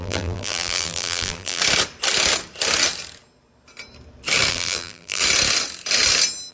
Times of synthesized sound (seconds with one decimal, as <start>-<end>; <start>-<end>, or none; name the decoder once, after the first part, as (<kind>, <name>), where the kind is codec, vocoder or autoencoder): 0.0-1.6 (vocoder, BigVGAN v2); 4.5-5.2